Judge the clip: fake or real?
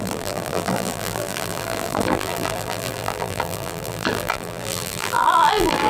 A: fake